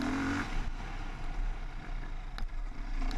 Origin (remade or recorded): recorded